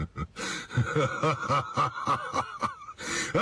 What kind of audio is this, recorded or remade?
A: recorded